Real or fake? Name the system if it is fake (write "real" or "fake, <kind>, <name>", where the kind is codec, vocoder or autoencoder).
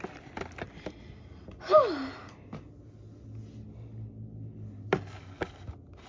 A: real